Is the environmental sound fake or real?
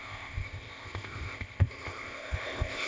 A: fake